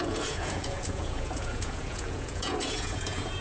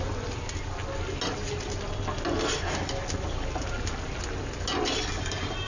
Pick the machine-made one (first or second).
first